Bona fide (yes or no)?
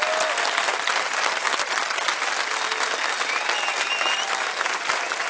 yes